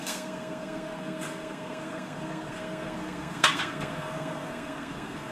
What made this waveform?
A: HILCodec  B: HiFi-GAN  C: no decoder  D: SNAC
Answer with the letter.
D